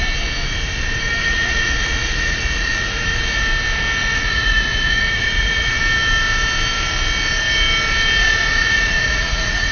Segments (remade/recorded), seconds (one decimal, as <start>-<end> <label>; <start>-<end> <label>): 0.0-1.2 recorded; 1.2-3.4 remade; 3.4-4.0 recorded; 4.0-5.8 remade; 5.8-8.5 recorded; 8.5-9.7 remade